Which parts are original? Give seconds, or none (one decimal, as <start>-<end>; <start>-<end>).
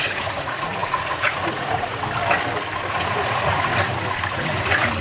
2.0-2.9; 3.7-4.3